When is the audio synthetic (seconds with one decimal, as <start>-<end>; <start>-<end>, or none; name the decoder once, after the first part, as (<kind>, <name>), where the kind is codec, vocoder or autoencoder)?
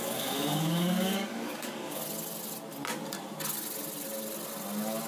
0.0-2.0 (codec, DAC)